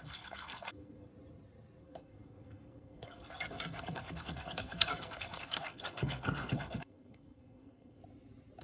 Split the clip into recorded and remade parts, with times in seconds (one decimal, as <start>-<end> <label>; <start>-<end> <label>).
0.0-1.1 remade; 1.1-1.8 recorded; 1.8-8.0 remade; 8.0-8.6 recorded